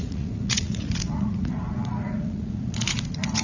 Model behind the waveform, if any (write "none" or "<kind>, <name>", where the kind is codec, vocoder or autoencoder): vocoder, Vocos